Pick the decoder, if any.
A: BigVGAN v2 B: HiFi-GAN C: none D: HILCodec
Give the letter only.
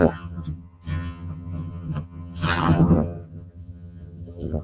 B